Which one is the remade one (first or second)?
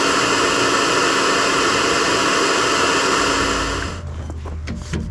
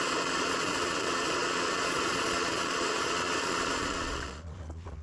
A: second